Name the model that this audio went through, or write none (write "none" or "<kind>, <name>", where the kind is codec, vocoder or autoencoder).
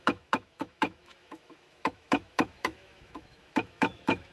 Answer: autoencoder, DAC-VAE